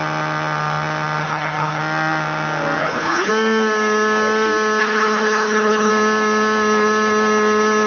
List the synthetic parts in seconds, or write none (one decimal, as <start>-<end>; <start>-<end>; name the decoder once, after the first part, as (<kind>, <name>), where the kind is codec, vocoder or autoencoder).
1.2-1.8 (codec, HILCodec); 2.8-3.3; 4.8-5.9